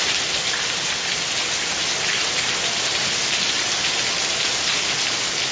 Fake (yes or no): no